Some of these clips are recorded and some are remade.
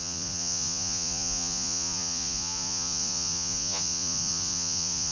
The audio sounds remade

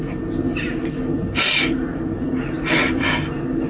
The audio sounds recorded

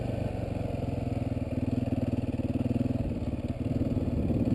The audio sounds recorded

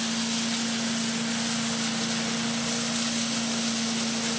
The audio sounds recorded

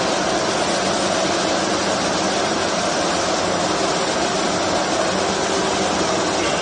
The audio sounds recorded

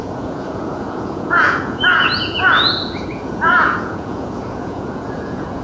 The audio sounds remade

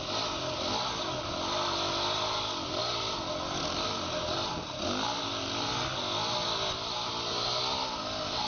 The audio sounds recorded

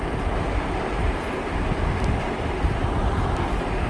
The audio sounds recorded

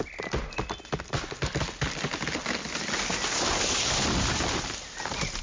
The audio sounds recorded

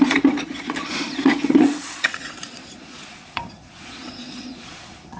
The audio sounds remade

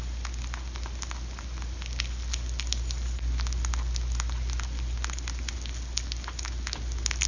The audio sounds recorded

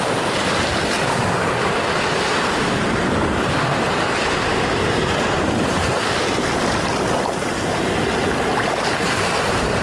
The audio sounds recorded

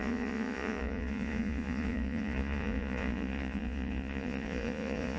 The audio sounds remade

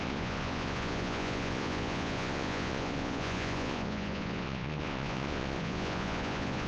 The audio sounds remade